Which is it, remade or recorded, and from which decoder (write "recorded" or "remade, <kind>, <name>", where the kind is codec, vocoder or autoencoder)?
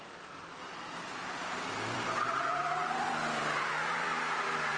remade, vocoder, BigVGAN v2